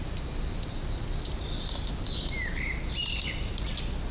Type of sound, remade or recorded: recorded